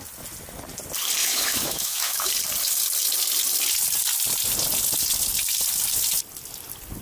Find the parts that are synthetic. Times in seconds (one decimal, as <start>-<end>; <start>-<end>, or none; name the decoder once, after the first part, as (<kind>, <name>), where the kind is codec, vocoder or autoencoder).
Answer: 1.2-2.3 (autoencoder, DAC-VAE)